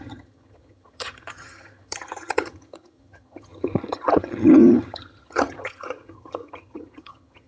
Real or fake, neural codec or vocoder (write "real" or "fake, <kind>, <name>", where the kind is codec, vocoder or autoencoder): fake, vocoder, HiFi-GAN